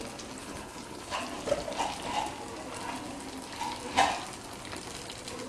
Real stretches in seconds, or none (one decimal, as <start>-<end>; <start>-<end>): 0.0-0.4; 1.2-5.5